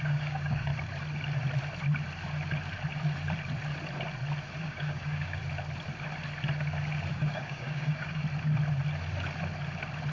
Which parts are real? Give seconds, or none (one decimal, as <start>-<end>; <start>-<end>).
0.7-4.6; 5.4-7.1; 8.2-10.1